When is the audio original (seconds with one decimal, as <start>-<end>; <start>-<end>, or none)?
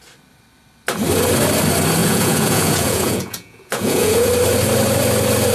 0.0-2.0; 4.3-5.5